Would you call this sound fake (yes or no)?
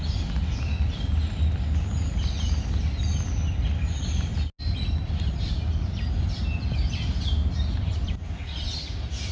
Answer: no